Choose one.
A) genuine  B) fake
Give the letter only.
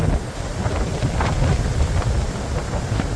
A